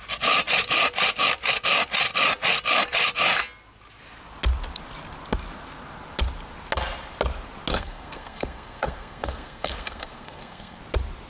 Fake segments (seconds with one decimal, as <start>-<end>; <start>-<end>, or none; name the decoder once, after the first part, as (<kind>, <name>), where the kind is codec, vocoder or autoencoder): 7.7-10.8 (codec, SNAC)